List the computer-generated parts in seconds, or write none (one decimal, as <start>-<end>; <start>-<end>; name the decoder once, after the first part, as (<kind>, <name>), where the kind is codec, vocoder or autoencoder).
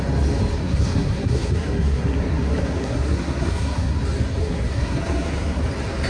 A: 0.5-4.0 (codec, SNAC); 4.4-5.6